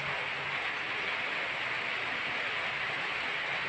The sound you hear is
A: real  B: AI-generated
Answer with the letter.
A